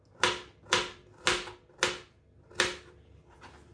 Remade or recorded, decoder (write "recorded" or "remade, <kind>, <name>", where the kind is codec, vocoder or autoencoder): recorded